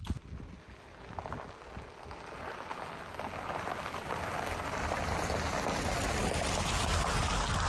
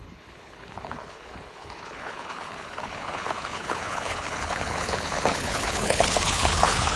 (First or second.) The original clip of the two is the first